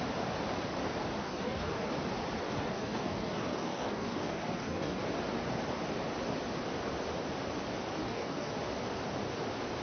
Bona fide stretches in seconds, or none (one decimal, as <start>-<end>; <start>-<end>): 0.0-1.2; 1.9-2.4; 5.0-8.0; 8.5-9.8